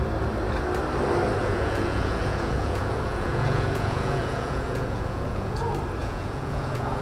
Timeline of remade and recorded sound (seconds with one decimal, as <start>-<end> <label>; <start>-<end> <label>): 0.0-1.4 recorded; 1.4-5.6 remade; 5.6-6.0 recorded; 6.0-7.0 remade